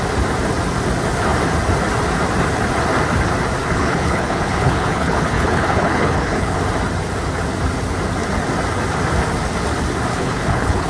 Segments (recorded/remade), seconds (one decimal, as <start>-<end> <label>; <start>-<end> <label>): 0.0-3.6 recorded; 3.6-6.6 remade; 6.6-10.1 recorded; 10.1-10.9 remade